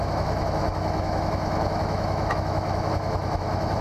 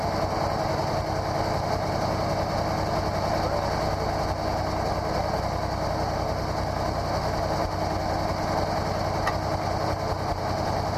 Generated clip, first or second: first